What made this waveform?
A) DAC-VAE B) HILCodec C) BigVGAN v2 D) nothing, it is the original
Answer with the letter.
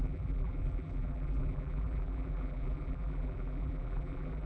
C